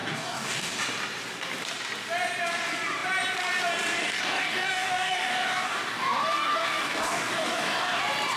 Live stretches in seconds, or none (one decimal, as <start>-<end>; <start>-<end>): 0.8-4.0; 8.0-8.4

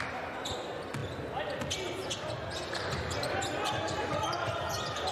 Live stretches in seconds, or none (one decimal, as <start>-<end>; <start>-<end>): 0.0-5.1